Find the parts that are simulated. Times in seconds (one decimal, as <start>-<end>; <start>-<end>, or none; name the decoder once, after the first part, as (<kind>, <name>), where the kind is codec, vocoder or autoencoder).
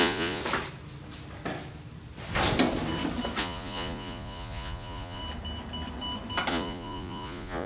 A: 0.0-0.4 (vocoder, Vocos); 3.4-5.2; 6.5-7.7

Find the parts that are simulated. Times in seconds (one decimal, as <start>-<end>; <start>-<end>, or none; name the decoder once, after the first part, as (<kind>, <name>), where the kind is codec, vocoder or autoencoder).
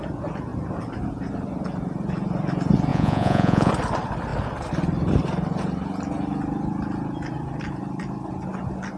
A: 2.9-3.7 (vocoder, Vocos)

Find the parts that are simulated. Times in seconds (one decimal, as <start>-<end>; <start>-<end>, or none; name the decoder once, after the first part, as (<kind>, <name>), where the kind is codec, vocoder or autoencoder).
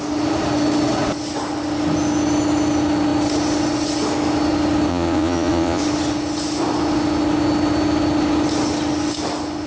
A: 4.9-5.8 (vocoder, Vocos)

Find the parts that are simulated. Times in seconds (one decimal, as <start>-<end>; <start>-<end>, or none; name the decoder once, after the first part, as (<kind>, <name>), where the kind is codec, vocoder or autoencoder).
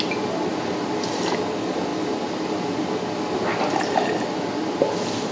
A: none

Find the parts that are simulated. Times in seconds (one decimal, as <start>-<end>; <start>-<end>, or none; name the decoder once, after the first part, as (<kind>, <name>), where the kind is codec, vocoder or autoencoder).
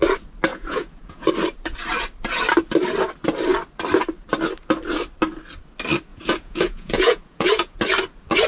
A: 0.5-1.3 (vocoder, Vocos); 6.1-7.8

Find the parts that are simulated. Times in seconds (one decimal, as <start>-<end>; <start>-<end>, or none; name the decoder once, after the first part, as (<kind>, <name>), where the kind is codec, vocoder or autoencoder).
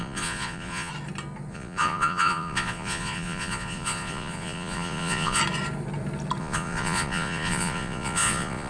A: 0.0-0.9 (vocoder, Vocos); 1.5-5.4; 6.4-8.7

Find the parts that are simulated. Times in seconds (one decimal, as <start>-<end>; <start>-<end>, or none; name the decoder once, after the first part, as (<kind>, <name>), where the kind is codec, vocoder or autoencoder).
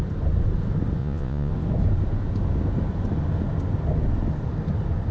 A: 1.0-1.5 (vocoder, Vocos)